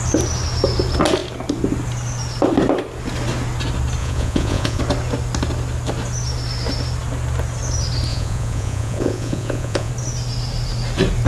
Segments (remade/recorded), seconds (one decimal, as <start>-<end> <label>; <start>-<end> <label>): 0.0-4.0 recorded; 4.0-4.8 remade; 4.8-8.1 recorded; 8.1-9.9 remade; 9.9-11.3 recorded